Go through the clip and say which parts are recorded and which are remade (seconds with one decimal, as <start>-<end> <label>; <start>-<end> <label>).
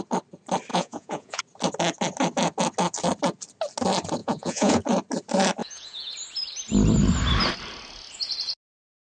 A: 0.0-0.7 recorded; 0.7-1.4 remade; 1.4-4.2 recorded; 4.2-4.8 remade; 4.8-5.6 recorded; 5.6-6.1 remade; 6.1-9.0 recorded